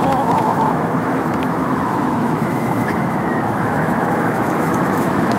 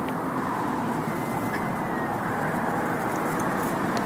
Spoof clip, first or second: first